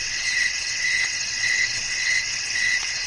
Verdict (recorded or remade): remade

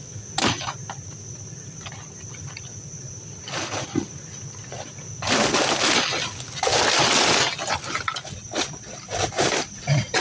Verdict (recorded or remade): recorded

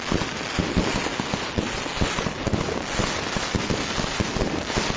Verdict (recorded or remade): recorded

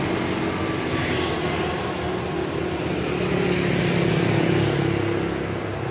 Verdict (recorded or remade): recorded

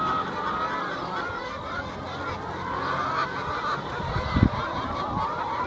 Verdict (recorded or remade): recorded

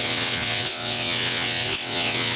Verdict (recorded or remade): remade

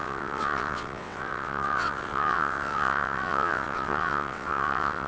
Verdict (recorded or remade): remade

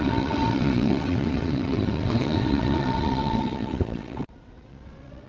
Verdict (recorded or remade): remade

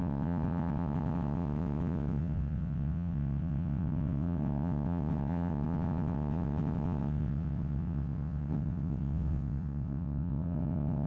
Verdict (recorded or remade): remade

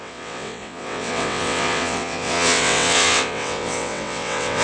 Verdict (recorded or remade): remade